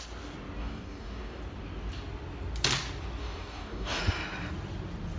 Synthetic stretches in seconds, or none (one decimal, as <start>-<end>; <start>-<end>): 0.6-1.4; 3.2-4.0